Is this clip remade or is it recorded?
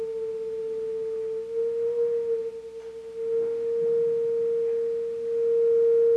recorded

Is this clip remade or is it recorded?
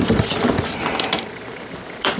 remade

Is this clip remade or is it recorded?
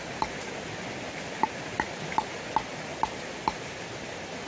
recorded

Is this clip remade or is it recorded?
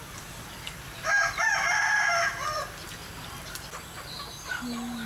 recorded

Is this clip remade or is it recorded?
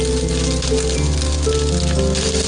recorded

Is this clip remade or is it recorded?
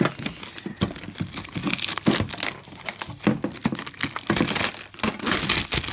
recorded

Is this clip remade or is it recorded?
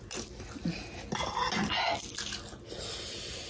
recorded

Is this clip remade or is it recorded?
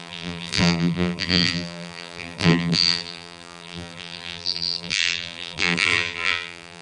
remade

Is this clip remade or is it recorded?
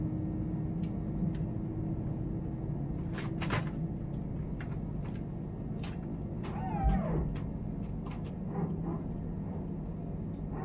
recorded